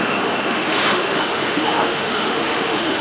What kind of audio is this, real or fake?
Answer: fake